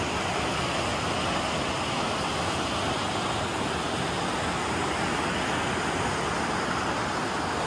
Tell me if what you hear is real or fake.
real